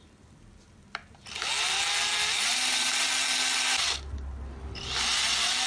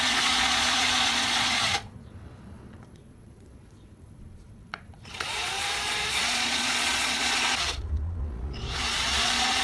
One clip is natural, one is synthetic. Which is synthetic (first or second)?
second